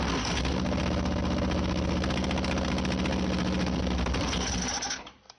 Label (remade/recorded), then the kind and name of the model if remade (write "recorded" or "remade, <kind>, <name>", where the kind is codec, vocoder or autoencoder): recorded